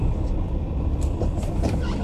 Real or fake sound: real